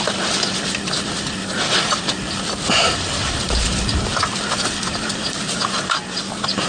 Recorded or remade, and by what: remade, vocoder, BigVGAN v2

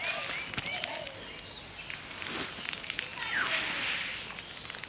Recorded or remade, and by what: recorded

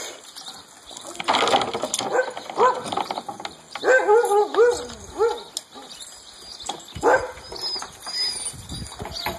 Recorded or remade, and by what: recorded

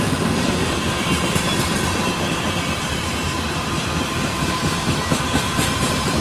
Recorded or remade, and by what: remade, vocoder, BigVGAN v2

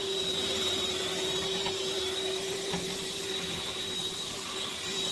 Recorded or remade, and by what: remade, vocoder, BigVGAN v2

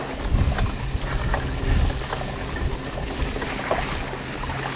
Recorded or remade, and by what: recorded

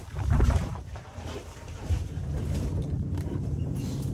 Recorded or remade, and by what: remade, vocoder, BigVGAN v2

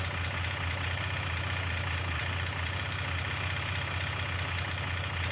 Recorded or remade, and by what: recorded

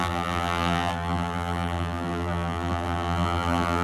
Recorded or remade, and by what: remade, vocoder, BigVGAN v2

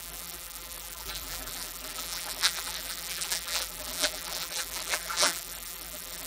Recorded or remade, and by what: remade, vocoder, BigVGAN v2